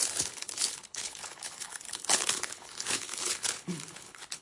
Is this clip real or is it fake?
fake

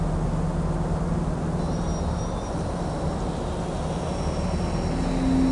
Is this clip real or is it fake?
real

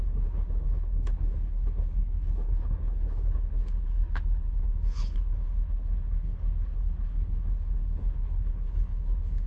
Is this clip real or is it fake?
fake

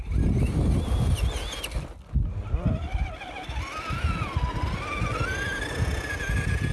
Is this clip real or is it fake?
real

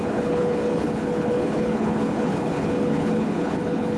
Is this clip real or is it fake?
fake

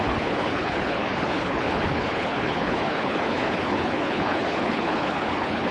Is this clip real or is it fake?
fake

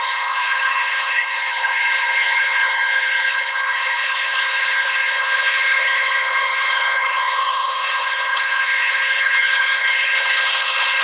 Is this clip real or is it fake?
fake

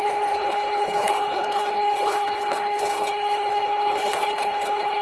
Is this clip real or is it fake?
fake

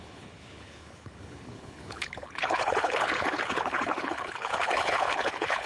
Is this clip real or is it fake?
fake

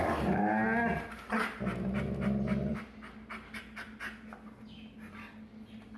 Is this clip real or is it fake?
real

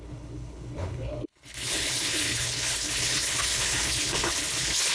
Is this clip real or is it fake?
fake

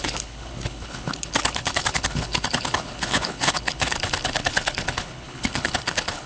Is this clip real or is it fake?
fake